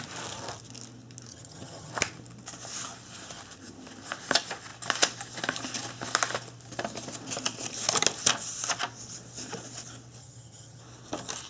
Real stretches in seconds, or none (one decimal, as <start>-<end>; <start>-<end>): 0.0-1.3; 1.9-10.2; 10.8-11.5